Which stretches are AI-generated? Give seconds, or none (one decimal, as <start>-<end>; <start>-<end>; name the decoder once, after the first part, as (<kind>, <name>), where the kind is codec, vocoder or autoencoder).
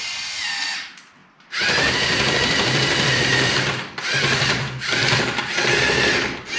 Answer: 1.2-5.2 (vocoder, BigVGAN v2)